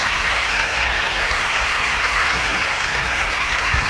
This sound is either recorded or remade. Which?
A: remade